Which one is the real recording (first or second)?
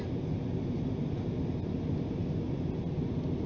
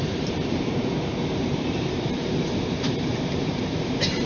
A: first